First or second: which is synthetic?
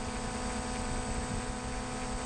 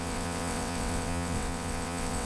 second